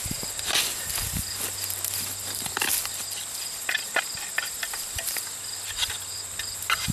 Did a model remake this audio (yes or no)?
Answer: no